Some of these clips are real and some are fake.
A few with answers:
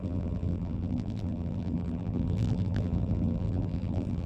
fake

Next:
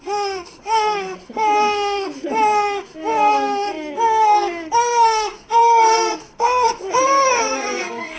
fake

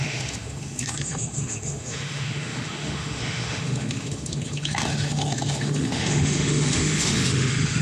fake